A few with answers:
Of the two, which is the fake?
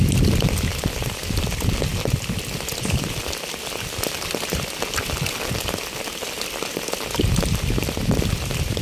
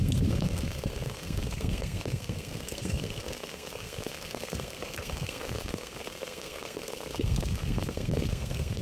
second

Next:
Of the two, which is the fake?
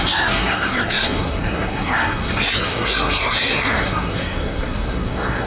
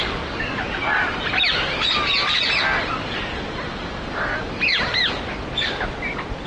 first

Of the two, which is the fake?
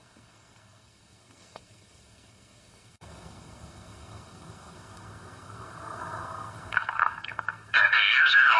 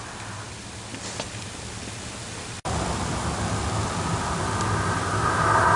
first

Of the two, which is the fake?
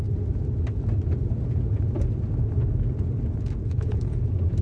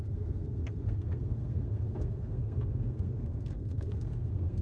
second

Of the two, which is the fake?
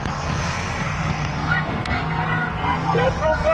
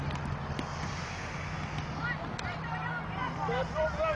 first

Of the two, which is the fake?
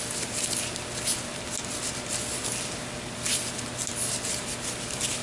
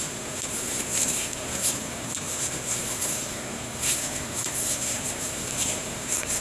second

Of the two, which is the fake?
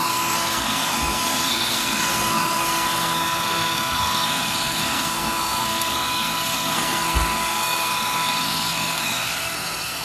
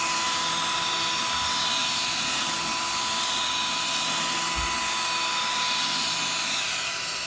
first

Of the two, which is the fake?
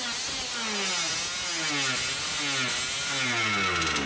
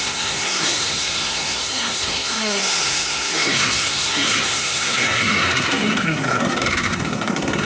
second